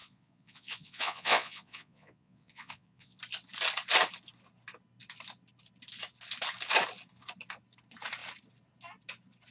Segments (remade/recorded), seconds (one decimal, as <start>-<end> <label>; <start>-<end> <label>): 0.0-3.2 remade; 3.2-9.5 recorded